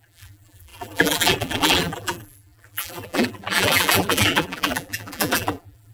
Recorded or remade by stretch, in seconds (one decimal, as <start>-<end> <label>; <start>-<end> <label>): 0.0-5.9 remade